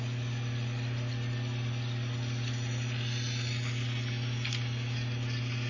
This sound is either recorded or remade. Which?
recorded